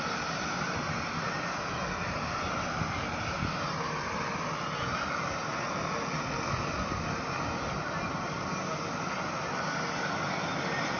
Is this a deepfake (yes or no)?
no